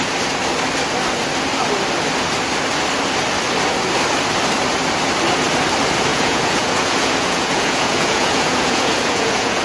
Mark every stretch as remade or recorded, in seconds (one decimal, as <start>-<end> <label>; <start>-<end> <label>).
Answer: 0.0-6.1 recorded; 6.1-9.6 remade